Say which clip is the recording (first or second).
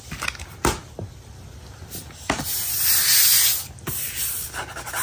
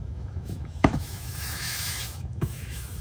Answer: first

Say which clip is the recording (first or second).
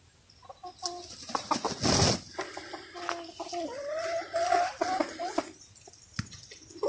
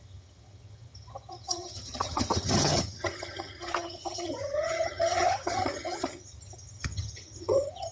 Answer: first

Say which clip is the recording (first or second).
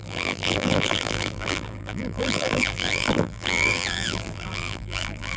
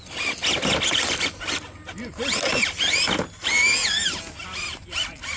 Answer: second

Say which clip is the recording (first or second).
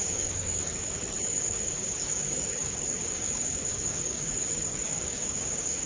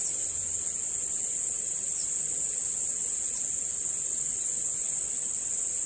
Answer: second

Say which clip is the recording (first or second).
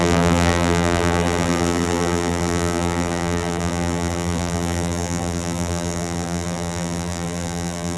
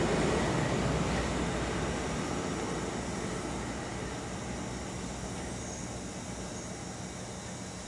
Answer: second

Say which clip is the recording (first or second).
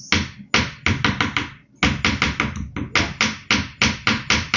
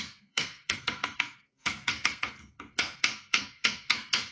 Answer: first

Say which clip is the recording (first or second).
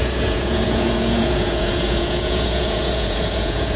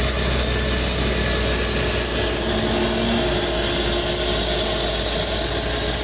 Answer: second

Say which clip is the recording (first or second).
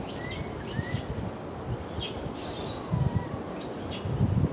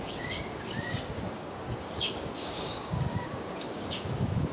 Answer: first